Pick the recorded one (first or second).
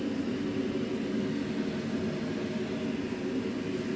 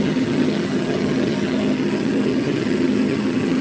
first